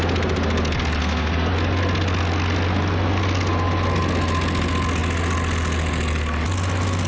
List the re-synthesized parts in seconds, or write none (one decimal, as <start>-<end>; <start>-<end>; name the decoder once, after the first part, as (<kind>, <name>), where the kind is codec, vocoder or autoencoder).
1.0-1.5 (codec, SNAC)